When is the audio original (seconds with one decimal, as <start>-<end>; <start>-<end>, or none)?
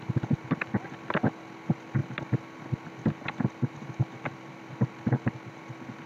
0.0-6.1